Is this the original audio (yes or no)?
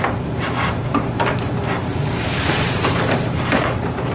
no